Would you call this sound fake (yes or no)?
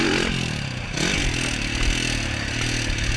no